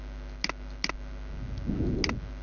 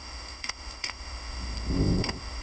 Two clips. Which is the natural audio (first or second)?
first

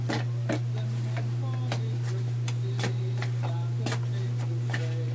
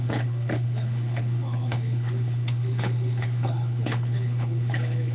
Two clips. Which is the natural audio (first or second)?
first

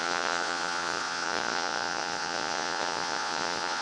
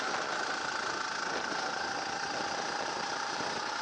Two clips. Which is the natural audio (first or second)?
second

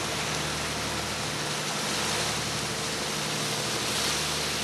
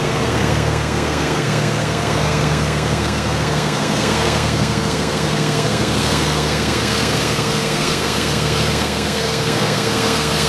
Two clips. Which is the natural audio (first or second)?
first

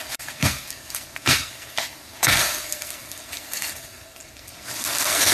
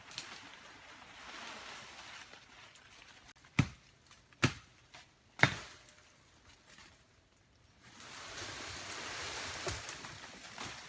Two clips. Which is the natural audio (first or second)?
second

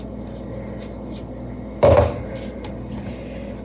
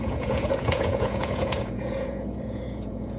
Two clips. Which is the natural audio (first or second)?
first